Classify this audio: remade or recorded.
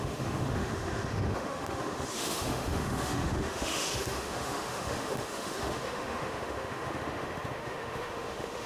remade